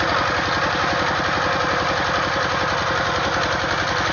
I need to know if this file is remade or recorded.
recorded